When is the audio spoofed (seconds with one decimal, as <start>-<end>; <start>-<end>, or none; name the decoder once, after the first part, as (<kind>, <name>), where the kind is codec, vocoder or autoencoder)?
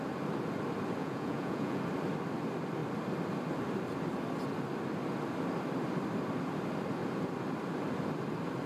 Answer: 1.0-1.8 (vocoder, Vocos)